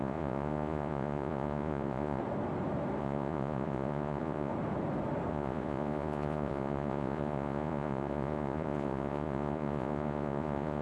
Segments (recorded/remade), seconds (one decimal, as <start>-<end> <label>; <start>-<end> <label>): 0.0-2.2 remade; 2.2-3.0 recorded; 3.0-4.5 remade; 4.5-5.3 recorded; 5.3-10.8 remade